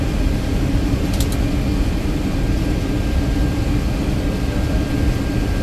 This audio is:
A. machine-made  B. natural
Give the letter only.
B